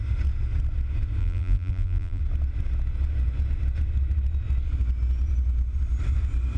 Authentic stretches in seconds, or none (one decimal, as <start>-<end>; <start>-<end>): 0.0-1.2; 2.2-6.6